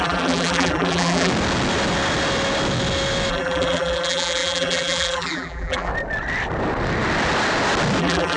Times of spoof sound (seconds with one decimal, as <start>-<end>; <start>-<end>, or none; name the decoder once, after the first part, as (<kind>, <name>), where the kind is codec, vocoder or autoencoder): 0.0-1.3 (vocoder, BigVGAN v2); 3.3-5.9; 8.0-8.4